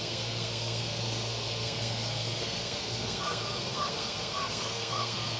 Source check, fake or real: fake